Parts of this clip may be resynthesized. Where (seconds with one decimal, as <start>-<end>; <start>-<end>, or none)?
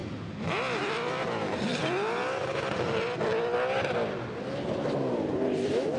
none